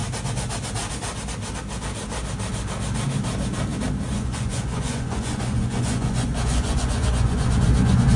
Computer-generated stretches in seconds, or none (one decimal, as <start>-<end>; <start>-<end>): 4.1-8.2